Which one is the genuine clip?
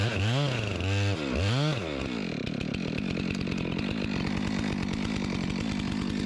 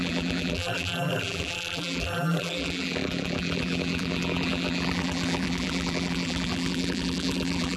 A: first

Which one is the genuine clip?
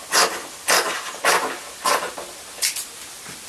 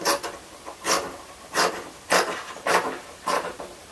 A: first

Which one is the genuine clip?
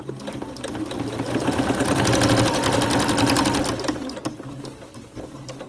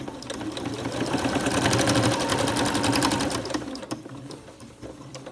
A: first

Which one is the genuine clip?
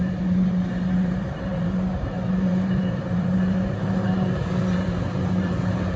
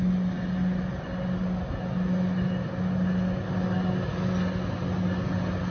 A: second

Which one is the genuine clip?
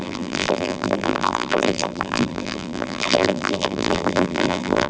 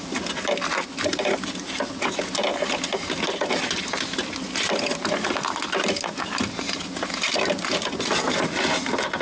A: second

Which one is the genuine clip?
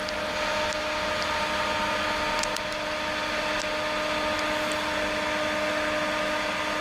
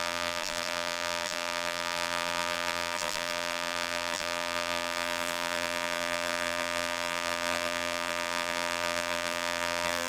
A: first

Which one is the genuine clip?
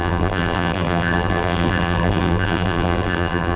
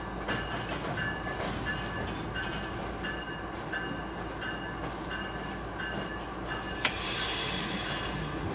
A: second